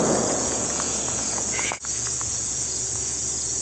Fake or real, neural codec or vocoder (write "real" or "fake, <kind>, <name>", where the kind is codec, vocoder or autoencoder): fake, vocoder, Vocos